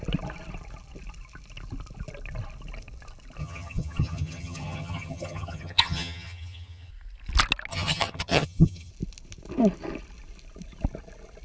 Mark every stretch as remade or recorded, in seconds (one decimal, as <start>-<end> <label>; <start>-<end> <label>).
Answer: 0.0-3.4 recorded; 3.4-6.9 remade; 6.9-7.7 recorded; 7.7-8.9 remade; 8.9-11.4 recorded